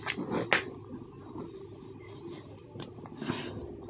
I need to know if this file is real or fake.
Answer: real